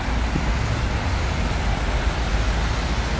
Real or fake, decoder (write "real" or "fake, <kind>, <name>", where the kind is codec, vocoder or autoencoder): real